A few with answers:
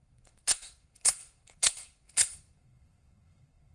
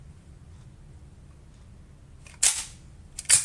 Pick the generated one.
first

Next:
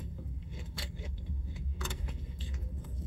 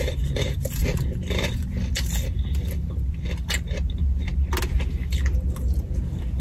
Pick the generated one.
first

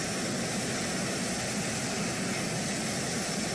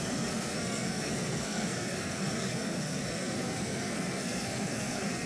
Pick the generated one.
second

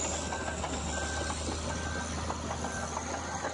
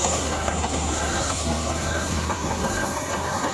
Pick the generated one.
second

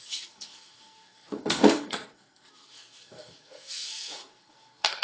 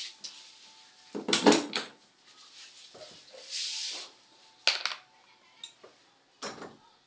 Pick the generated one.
first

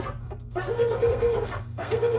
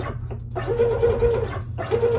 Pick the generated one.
first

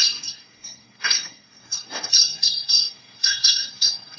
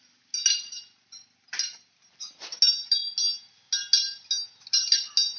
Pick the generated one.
first